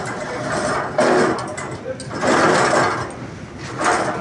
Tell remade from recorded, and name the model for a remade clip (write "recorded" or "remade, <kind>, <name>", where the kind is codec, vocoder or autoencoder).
recorded